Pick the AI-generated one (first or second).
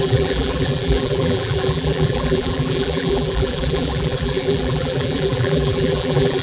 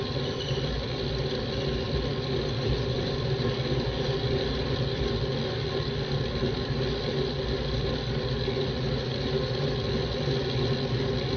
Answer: first